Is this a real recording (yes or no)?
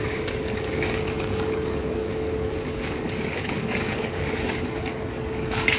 no